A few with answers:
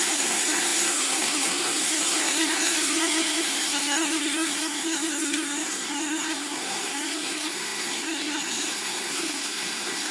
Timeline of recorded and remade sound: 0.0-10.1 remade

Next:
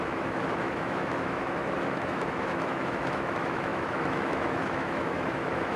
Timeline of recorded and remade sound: 0.0-5.8 remade

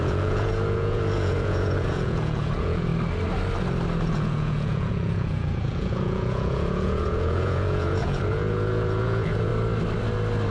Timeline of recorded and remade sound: 0.0-2.9 remade; 2.9-4.1 recorded; 4.1-9.5 remade; 9.5-10.5 recorded

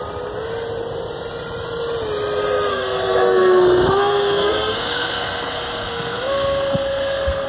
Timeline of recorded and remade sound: 0.0-2.7 recorded; 2.7-7.5 remade